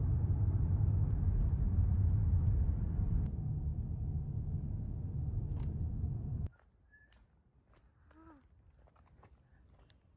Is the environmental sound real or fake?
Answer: real